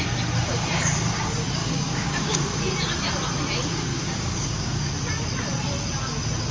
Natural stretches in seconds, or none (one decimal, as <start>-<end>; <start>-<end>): 0.0-1.6; 2.6-3.9; 4.9-6.5